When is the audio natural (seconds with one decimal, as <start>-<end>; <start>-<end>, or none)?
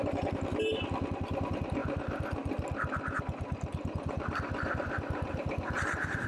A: 1.8-3.2